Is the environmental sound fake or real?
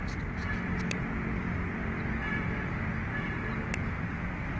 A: real